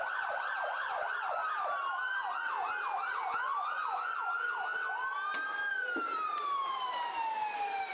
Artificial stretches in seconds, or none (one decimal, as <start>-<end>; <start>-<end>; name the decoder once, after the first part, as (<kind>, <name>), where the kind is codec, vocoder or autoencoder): 0.0-1.4 (vocoder, Vocos); 3.1-4.5